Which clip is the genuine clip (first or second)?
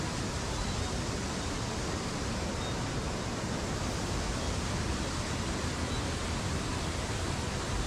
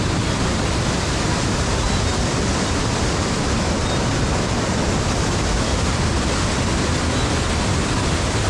first